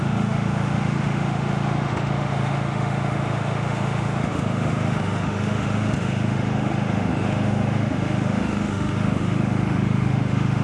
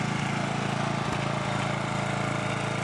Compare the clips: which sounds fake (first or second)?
first